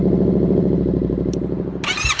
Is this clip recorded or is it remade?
remade